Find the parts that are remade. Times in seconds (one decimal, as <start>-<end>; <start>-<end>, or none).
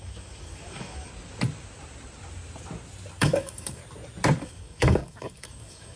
0.0-1.1; 3.2-3.8; 4.4-6.0